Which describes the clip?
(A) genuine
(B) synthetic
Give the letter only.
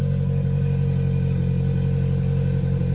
A